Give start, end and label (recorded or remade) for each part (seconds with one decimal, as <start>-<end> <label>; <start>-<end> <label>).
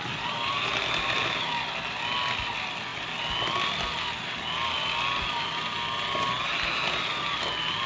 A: 0.0-7.9 recorded